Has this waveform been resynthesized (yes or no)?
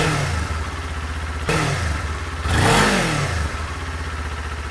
no